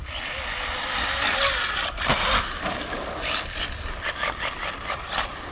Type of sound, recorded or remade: recorded